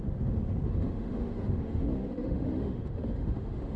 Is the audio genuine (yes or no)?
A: no